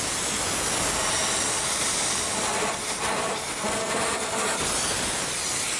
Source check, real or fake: real